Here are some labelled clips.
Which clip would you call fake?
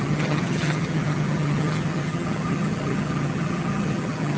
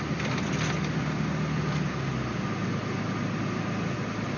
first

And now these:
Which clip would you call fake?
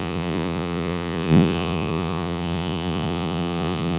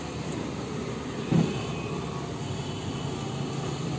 first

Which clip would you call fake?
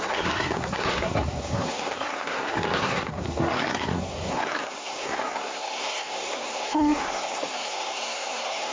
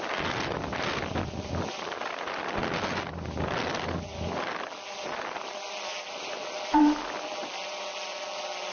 first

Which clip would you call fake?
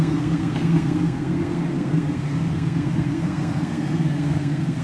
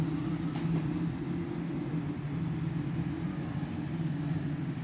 first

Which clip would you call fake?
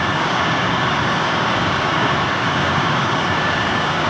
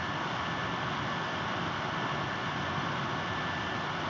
first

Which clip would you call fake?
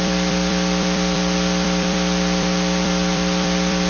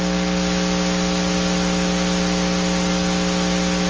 first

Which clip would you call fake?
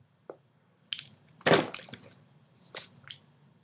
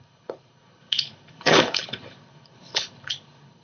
second